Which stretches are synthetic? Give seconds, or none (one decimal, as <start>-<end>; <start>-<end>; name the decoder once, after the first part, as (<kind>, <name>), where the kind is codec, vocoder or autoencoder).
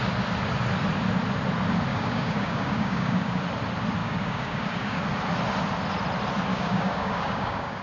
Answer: 1.9-3.4 (codec, DAC); 4.0-5.0; 6.5-7.8